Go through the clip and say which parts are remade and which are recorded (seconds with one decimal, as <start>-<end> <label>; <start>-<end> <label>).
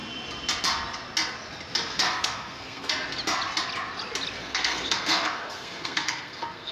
0.0-1.9 recorded; 1.9-2.9 remade; 2.9-4.4 recorded; 4.4-6.7 remade